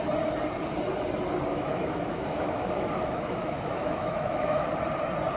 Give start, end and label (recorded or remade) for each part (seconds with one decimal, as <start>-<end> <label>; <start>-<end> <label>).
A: 0.0-1.5 recorded; 1.5-4.7 remade; 4.7-5.4 recorded